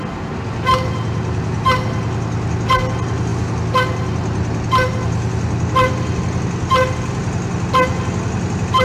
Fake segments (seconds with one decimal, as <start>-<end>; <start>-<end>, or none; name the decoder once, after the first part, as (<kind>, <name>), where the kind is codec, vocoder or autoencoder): none